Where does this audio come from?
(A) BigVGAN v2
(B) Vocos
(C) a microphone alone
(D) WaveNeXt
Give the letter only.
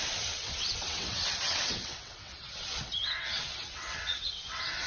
D